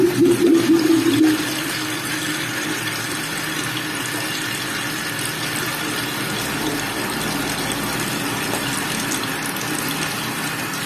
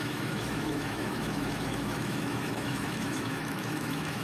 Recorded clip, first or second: first